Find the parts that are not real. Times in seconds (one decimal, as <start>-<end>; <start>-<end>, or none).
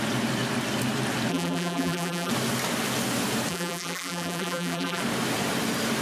1.3-2.3; 3.5-5.0